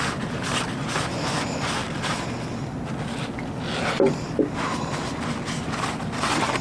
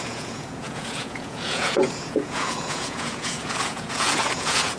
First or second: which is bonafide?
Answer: first